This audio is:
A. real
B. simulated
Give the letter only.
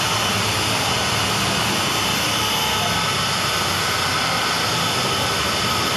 A